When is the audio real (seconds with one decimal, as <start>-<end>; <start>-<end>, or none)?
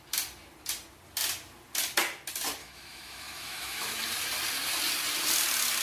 0.0-2.6; 4.0-5.8